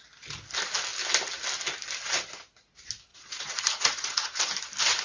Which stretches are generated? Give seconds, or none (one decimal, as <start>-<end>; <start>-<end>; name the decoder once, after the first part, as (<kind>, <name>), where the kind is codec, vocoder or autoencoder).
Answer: 3.1-4.4 (vocoder, Vocos)